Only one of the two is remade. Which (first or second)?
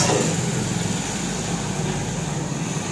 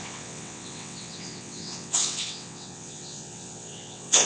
second